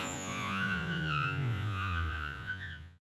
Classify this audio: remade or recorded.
remade